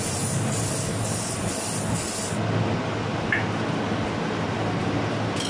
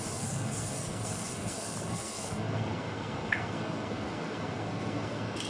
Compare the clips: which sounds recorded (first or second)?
first